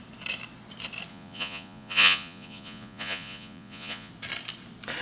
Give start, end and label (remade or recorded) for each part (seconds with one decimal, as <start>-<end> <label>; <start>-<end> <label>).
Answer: 0.0-1.1 recorded; 1.1-4.1 remade; 4.1-5.0 recorded